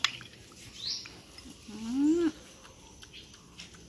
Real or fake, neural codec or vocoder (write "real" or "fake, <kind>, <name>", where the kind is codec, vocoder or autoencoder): real